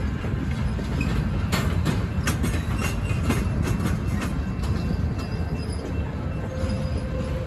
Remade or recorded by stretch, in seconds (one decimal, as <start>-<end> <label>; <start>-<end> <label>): 0.0-7.5 recorded